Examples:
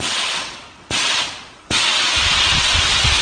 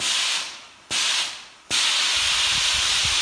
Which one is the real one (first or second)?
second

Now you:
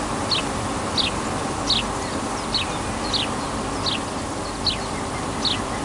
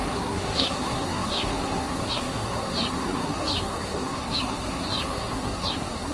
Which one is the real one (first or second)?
first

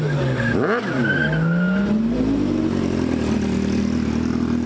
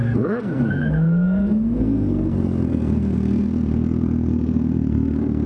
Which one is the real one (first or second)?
first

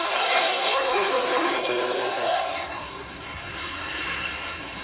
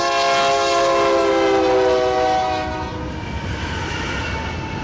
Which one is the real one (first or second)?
second